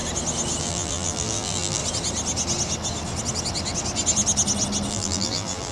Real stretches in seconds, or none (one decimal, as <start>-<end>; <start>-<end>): 0.0-0.6; 1.8-4.9